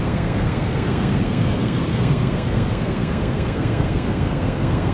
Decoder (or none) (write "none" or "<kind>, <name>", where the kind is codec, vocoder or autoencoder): codec, SNAC